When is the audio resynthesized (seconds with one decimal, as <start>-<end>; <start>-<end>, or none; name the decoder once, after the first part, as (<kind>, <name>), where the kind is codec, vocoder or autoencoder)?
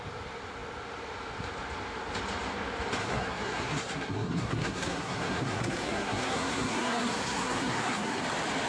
3.0-8.2 (codec, SNAC)